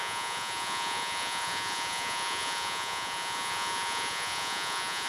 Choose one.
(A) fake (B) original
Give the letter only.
A